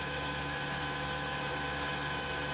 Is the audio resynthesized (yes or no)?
yes